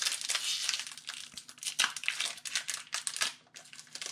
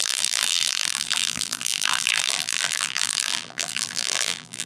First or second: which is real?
first